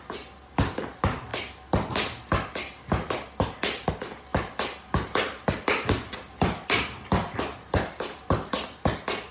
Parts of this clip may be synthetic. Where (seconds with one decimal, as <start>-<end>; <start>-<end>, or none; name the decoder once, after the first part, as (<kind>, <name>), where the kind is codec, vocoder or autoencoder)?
none